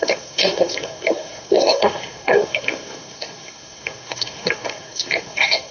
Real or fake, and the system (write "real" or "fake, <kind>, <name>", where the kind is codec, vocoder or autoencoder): fake, codec, SNAC